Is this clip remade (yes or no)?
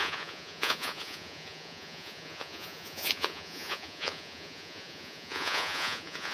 yes